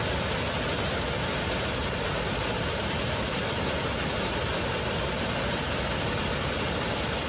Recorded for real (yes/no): yes